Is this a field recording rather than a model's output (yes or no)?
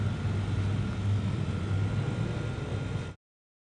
yes